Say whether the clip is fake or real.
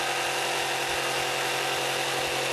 real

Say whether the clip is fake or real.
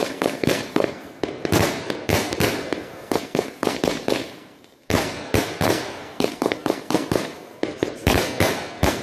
fake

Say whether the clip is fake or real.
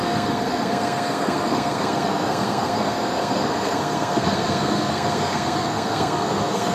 fake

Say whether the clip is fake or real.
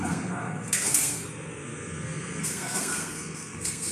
fake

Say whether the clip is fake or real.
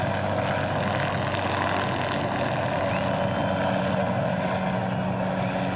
real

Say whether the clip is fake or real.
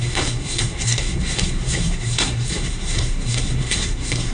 fake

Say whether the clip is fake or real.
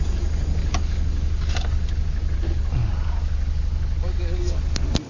real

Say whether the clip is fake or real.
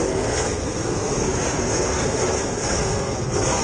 fake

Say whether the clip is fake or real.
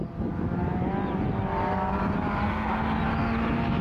real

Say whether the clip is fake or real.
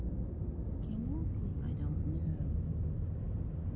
real